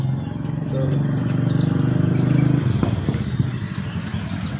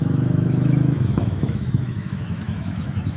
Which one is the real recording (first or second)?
first